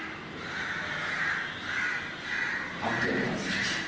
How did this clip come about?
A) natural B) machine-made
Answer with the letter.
A